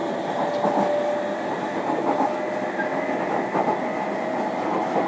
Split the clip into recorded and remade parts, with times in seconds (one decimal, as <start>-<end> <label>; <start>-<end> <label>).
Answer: 0.0-5.1 recorded

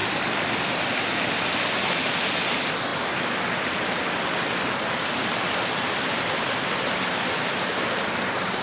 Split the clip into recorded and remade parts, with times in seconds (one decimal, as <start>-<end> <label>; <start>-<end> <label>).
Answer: 0.0-8.6 recorded